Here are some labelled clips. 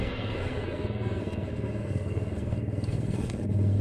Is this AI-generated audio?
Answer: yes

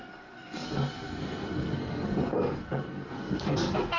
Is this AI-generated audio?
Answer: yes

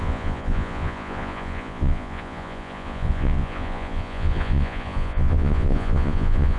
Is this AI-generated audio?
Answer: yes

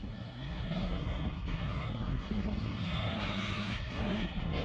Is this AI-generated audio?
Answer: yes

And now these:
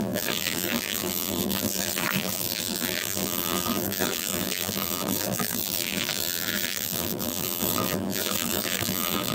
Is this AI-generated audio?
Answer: yes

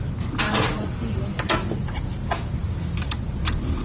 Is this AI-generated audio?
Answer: no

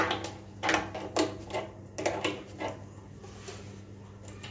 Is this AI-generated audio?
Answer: no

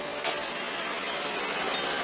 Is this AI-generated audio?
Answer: no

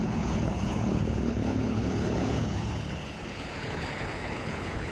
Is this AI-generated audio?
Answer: yes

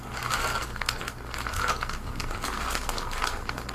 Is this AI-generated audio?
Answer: yes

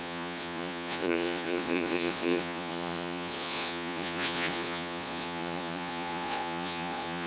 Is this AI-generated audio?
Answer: yes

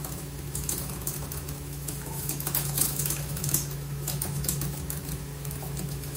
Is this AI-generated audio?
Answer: yes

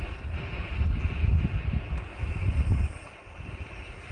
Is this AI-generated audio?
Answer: no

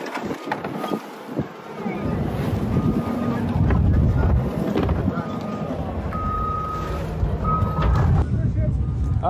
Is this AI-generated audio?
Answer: no